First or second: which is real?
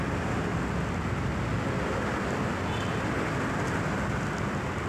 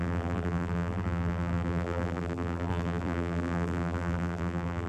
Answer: first